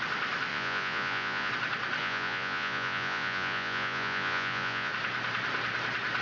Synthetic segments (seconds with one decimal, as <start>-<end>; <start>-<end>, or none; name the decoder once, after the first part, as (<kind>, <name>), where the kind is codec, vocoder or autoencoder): 0.5-1.5 (vocoder, Vocos); 2.0-4.9